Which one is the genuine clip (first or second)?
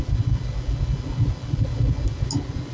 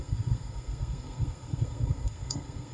first